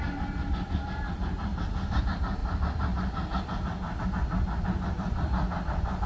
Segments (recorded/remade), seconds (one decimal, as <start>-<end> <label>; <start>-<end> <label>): 0.0-6.1 recorded